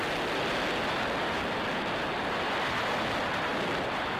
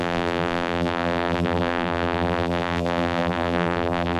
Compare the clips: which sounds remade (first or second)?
second